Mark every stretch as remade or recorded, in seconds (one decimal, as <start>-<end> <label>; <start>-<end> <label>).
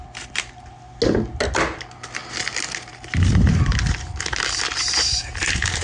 0.0-5.8 recorded